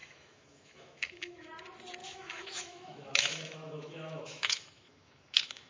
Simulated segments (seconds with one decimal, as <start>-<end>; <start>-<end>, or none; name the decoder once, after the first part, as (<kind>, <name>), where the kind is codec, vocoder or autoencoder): 0.0-1.5 (autoencoder, DAC-VAE); 2.0-5.7